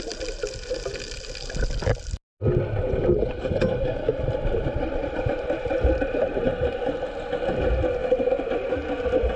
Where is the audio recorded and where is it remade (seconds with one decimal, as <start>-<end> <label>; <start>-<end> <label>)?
0.0-2.8 recorded; 2.8-6.8 remade; 6.8-8.0 recorded; 8.0-8.7 remade; 8.7-9.4 recorded